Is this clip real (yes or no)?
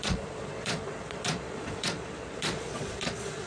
no